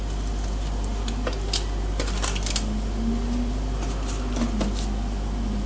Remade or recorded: recorded